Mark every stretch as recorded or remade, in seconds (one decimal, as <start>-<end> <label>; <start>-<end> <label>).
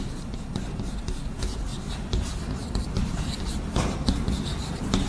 0.0-1.7 recorded; 1.7-4.1 remade; 4.1-5.1 recorded